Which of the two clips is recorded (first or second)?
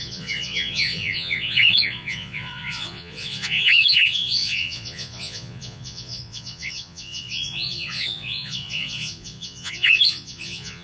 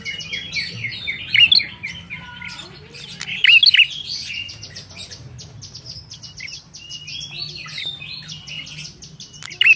second